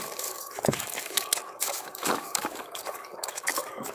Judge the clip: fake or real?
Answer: fake